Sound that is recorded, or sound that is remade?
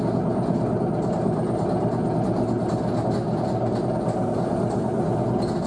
recorded